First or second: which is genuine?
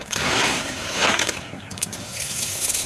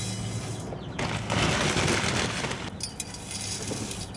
second